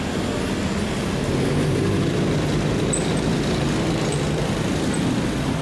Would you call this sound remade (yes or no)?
no